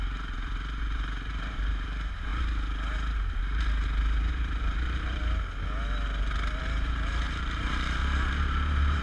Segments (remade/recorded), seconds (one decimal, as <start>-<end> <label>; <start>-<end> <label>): 0.0-2.3 remade; 2.3-4.3 recorded; 4.3-5.2 remade; 5.2-6.6 recorded; 6.6-8.0 remade; 8.0-9.0 recorded